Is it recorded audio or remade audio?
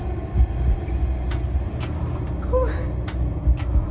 recorded